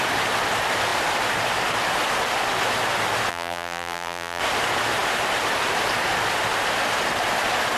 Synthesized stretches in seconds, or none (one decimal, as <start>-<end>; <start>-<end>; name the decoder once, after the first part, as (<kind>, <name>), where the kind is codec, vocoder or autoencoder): 3.3-4.4 (vocoder, BigVGAN v2)